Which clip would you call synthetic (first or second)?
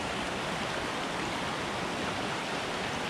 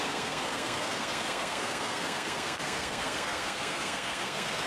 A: second